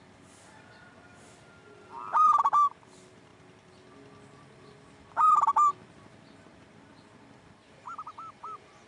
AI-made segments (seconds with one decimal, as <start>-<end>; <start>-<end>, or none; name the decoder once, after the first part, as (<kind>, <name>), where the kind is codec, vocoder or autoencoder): none